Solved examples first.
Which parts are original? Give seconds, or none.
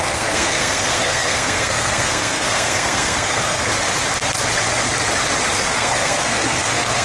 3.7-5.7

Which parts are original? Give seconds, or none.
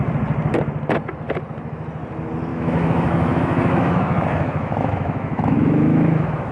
0.0-2.5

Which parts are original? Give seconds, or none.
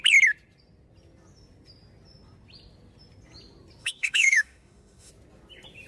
0.0-3.8; 5.1-5.9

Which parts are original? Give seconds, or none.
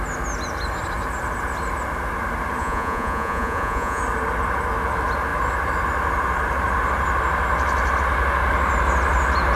0.0-2.6; 4.0-9.6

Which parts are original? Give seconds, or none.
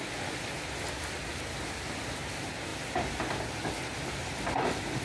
0.0-5.0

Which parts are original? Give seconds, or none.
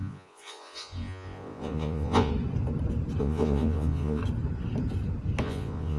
2.3-3.2; 4.2-5.4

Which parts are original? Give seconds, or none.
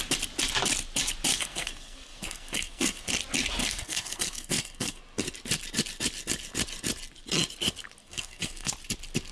0.0-1.3; 3.1-3.6; 5.0-8.0; 8.7-9.3